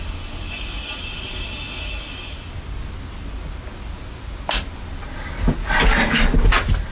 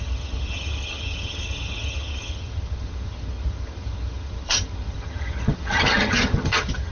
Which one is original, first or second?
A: first